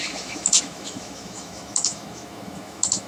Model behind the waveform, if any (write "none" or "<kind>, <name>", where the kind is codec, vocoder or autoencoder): autoencoder, DAC-VAE